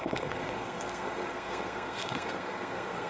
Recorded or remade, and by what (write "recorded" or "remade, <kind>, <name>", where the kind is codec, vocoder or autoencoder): remade, codec, SNAC